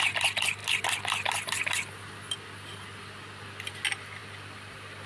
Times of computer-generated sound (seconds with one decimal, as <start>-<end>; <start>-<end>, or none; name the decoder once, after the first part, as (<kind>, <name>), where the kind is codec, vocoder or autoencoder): none

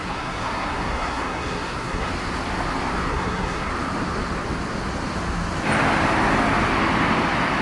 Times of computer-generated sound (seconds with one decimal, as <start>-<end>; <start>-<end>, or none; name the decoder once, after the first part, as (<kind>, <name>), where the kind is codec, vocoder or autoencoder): 0.0-2.1 (codec, SNAC); 3.1-3.7

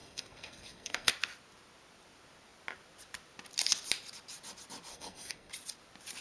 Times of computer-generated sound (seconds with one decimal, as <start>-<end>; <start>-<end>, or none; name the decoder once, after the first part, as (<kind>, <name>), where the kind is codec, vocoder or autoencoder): 0.0-1.1 (codec, SNAC); 4.9-5.5

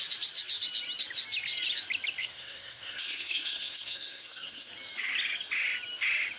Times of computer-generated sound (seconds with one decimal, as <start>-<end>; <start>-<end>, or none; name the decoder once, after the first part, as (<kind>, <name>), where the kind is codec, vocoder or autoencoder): 2.2-4.7 (codec, SNAC)

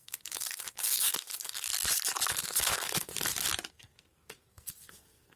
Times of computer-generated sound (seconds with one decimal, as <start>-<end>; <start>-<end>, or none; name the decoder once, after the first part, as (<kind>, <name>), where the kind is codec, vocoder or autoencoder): 0.0-1.7 (codec, SNAC); 2.3-3.1; 3.7-5.4